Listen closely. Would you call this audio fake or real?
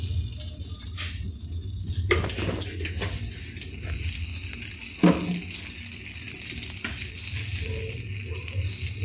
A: real